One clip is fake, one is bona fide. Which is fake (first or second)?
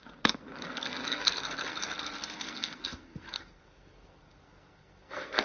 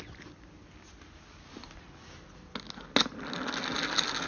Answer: first